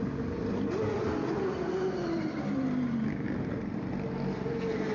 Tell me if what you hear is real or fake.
real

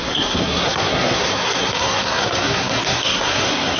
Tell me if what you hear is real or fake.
fake